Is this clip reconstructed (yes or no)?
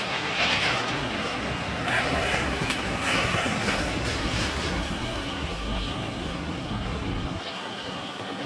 yes